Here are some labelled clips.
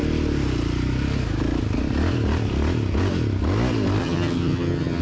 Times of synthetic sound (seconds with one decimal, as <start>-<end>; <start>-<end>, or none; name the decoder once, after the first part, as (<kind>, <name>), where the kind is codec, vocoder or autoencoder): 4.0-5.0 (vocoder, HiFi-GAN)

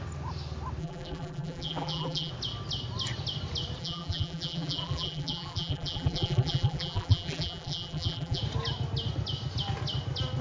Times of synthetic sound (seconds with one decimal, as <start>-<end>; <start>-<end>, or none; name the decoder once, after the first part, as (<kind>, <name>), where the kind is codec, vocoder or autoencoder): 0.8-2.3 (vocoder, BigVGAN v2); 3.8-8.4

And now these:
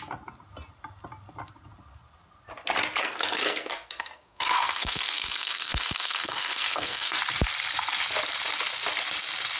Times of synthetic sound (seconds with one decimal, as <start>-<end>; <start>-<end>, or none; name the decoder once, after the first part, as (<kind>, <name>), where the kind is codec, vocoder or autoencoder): 3.0-7.2 (codec, SNAC)

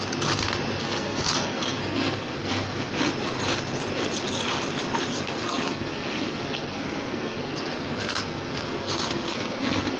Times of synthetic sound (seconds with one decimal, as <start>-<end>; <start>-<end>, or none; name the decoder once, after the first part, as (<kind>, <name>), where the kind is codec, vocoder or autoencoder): 0.8-2.9 (codec, SNAC); 5.1-10.0